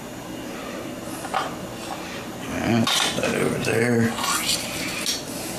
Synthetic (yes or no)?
no